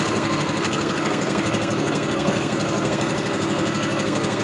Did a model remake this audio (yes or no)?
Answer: yes